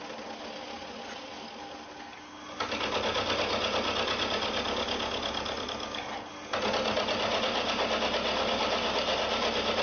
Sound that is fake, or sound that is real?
real